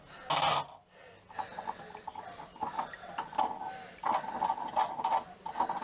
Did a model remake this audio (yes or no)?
no